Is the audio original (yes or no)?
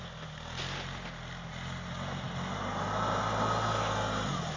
yes